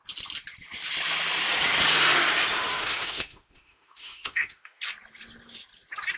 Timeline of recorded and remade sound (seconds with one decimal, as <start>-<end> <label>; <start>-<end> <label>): 0.0-2.7 recorded; 2.7-4.8 remade; 4.8-6.2 recorded